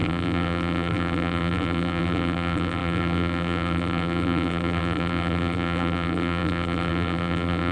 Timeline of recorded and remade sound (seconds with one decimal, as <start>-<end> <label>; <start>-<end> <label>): 0.0-7.7 remade